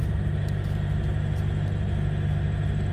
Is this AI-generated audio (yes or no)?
no